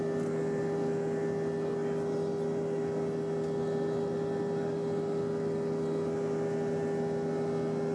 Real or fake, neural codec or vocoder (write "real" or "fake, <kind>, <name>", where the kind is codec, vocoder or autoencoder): real